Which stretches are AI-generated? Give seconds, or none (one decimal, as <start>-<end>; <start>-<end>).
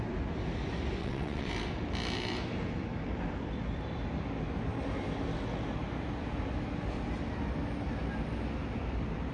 1.0-1.5